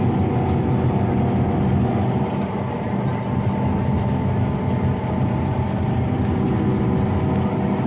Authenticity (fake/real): real